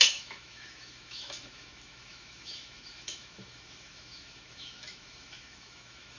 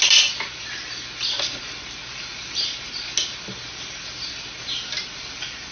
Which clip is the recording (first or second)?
second